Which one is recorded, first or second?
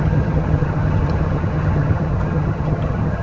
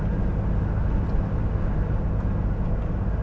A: second